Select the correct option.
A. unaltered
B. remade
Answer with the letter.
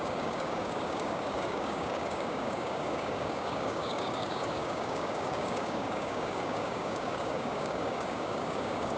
B